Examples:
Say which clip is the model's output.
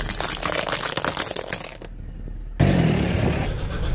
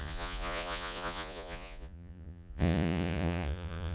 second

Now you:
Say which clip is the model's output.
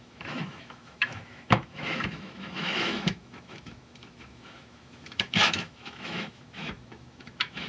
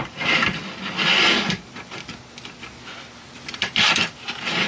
first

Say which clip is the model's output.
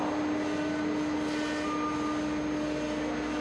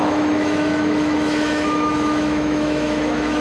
second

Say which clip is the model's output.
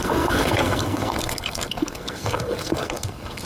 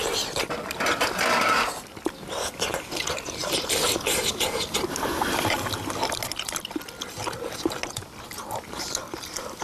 first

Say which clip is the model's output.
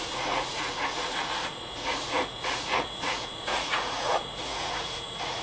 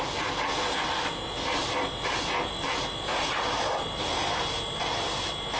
first